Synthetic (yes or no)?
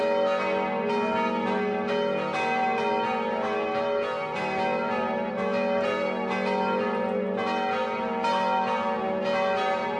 no